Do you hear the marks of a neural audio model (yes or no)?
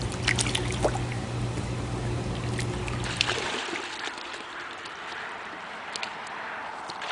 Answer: no